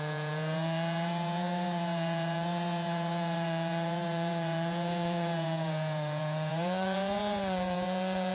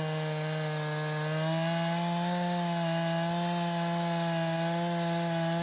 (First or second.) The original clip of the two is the second